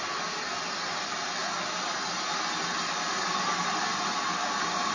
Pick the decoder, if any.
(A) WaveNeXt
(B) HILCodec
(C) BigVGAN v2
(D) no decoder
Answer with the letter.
D